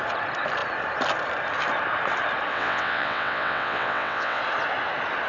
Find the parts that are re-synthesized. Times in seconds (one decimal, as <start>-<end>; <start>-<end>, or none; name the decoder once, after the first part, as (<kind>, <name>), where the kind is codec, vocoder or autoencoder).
2.5-4.4 (vocoder, WaveNeXt)